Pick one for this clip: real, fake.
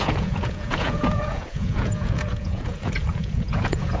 fake